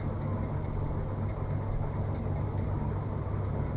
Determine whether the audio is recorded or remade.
recorded